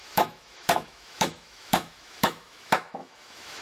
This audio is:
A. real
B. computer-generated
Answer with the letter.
B